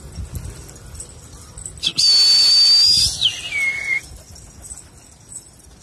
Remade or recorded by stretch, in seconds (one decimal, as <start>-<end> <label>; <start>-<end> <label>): 0.0-5.8 recorded